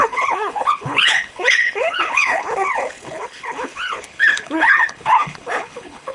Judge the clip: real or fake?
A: fake